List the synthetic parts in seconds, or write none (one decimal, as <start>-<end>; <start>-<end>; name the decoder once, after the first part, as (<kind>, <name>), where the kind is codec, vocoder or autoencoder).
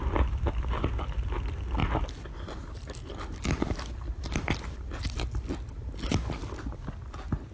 none